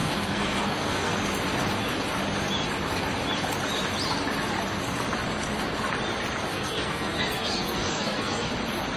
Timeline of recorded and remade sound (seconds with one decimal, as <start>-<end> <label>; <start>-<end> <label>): 0.0-1.2 remade; 1.2-6.5 recorded; 6.5-8.5 remade; 8.5-9.0 recorded